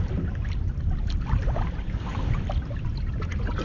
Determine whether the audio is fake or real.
fake